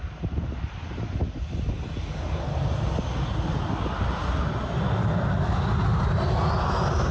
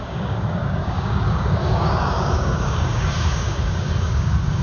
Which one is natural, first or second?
first